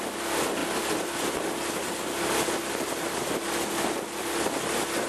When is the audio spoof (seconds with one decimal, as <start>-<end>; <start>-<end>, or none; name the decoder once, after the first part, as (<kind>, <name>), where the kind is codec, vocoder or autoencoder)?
0.6-3.7 (vocoder, BigVGAN v2)